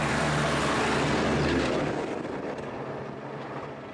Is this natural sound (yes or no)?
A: yes